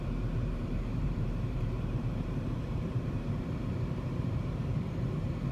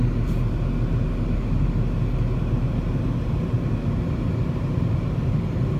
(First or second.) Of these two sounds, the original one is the second